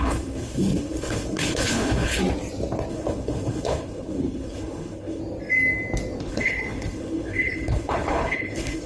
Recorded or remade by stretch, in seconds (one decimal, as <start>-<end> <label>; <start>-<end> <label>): 0.0-2.2 remade; 2.2-2.9 recorded; 2.9-5.2 remade; 5.2-6.2 recorded; 6.2-8.9 remade

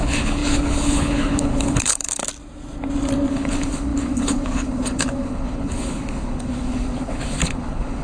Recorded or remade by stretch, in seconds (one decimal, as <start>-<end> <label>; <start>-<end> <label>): 0.0-2.2 remade; 2.2-3.3 recorded; 3.3-8.0 remade

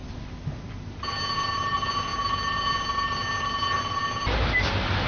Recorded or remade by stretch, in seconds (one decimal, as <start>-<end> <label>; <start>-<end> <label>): 0.0-5.1 recorded

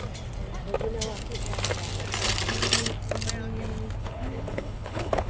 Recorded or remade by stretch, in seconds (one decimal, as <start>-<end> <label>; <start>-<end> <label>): 0.0-4.0 recorded; 4.0-5.3 remade